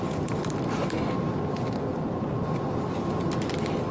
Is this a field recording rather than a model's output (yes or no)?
yes